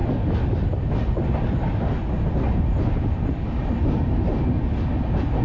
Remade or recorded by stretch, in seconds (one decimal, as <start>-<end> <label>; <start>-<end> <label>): 0.0-5.4 recorded